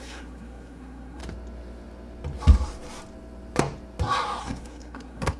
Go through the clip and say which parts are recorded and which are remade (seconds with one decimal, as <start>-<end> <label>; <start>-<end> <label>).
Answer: 0.0-1.2 remade; 1.2-4.4 recorded; 4.4-5.4 remade